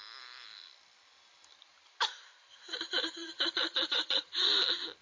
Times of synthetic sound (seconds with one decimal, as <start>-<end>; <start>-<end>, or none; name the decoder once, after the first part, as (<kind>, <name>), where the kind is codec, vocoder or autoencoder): 2.7-4.3 (vocoder, HiFi-GAN)